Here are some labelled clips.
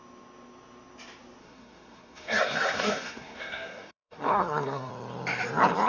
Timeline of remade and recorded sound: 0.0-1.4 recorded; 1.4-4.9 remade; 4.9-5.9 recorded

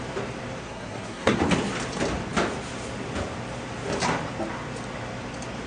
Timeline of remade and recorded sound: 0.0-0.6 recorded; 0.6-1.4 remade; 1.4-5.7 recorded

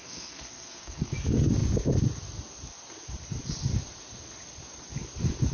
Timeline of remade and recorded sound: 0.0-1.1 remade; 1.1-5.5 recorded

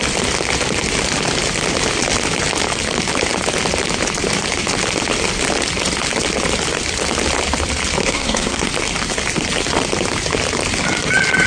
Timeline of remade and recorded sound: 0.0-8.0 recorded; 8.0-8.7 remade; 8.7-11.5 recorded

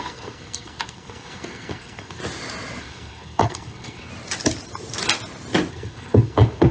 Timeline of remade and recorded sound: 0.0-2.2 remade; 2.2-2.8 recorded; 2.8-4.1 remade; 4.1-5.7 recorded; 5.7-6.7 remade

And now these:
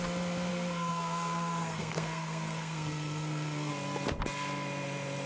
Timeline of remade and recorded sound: 0.0-0.5 recorded; 0.5-3.7 remade; 3.7-5.3 recorded

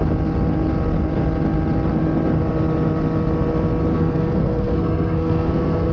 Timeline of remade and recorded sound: 0.0-3.9 recorded; 3.9-5.9 remade

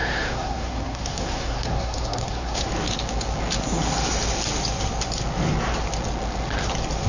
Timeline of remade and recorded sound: 0.0-2.7 remade; 2.7-7.1 recorded